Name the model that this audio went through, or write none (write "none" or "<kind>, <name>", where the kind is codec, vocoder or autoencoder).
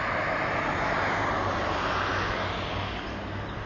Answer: none